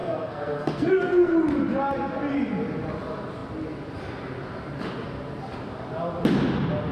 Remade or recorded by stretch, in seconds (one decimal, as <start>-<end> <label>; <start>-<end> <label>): 0.0-1.3 remade; 1.3-6.9 recorded

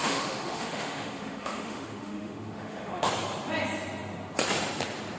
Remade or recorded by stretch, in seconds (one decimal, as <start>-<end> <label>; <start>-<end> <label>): 0.0-3.1 remade; 3.1-5.2 recorded

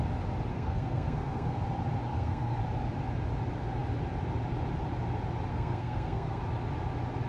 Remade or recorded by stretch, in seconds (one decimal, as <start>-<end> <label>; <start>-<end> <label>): 0.0-0.5 recorded; 0.5-1.6 remade; 1.6-2.1 recorded; 2.1-2.6 remade; 2.6-5.5 recorded; 5.5-6.4 remade; 6.4-7.3 recorded

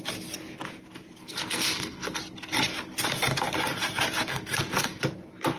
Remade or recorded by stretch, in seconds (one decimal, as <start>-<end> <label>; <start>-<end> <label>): 0.0-1.2 recorded; 1.2-2.2 remade; 2.2-4.3 recorded; 4.3-5.0 remade; 5.0-5.6 recorded

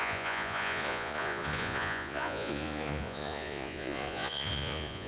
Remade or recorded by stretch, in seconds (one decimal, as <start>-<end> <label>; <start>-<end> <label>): 0.0-5.1 remade

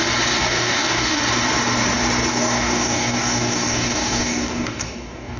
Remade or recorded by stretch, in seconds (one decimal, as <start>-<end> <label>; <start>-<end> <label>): 0.0-0.4 recorded; 0.4-1.2 remade; 1.2-2.3 recorded; 2.3-5.4 remade